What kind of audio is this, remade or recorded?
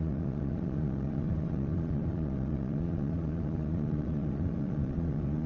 remade